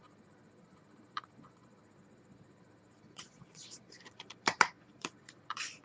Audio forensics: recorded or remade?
remade